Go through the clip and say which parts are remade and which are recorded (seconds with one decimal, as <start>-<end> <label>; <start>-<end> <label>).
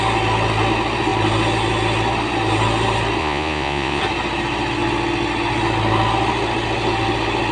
0.0-3.2 recorded; 3.2-4.0 remade; 4.0-7.5 recorded